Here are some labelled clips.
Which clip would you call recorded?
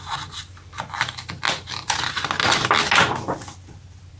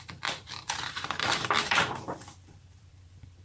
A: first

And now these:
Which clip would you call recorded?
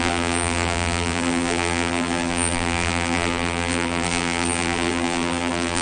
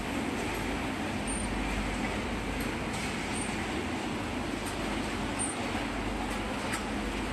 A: second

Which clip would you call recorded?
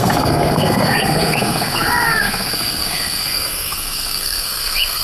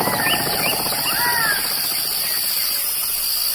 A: second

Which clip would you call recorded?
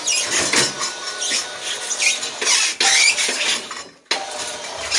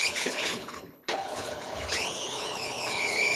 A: first